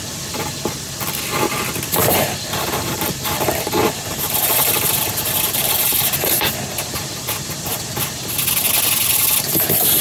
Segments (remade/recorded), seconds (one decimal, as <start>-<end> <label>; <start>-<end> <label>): 0.0-2.0 recorded; 2.0-6.5 remade; 6.5-10.0 recorded

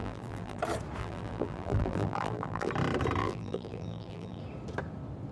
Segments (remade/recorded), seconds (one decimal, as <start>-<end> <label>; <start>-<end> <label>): 0.0-0.6 remade; 0.6-1.0 recorded; 1.0-2.7 remade; 2.7-3.2 recorded; 3.2-4.4 remade; 4.4-5.3 recorded